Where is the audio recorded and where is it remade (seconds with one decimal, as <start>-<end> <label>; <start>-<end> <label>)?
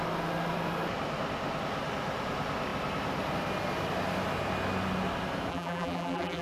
0.0-5.5 recorded; 5.5-6.4 remade